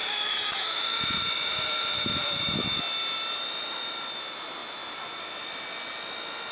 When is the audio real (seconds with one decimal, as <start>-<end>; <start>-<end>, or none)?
2.8-6.5